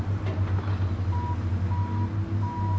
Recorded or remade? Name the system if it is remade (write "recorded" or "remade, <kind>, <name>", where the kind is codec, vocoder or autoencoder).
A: recorded